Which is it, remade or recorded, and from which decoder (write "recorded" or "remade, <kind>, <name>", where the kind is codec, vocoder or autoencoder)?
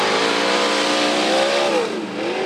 recorded